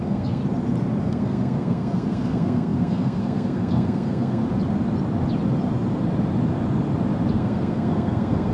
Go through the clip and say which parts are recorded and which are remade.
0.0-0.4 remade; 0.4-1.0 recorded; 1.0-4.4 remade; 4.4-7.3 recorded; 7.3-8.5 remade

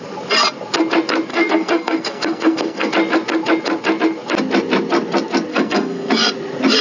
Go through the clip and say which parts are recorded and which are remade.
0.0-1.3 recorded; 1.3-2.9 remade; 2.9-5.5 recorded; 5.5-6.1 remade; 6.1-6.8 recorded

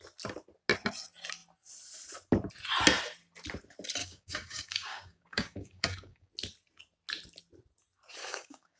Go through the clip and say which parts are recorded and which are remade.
0.0-4.0 recorded; 4.0-6.3 remade; 6.3-8.2 recorded; 8.2-8.8 remade